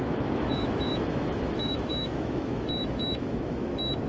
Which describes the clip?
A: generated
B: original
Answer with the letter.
A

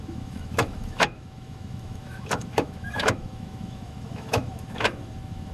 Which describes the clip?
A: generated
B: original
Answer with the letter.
A